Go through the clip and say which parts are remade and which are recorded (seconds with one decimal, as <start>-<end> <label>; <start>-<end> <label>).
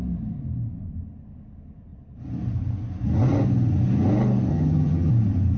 0.0-4.5 recorded; 4.5-5.1 remade; 5.1-5.6 recorded